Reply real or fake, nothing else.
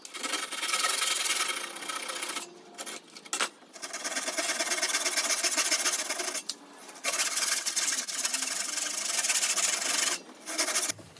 real